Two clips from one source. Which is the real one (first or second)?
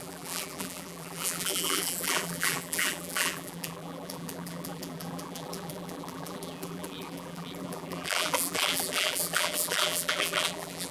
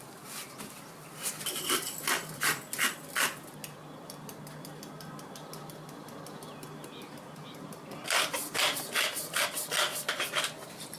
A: second